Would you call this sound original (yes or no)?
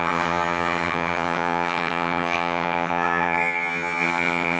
no